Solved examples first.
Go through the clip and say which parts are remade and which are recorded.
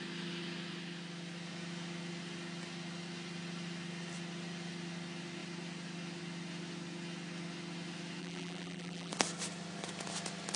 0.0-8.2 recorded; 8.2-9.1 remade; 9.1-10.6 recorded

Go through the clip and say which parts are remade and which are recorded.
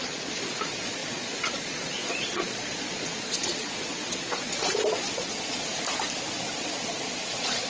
0.0-5.7 remade; 5.7-6.6 recorded; 6.6-7.7 remade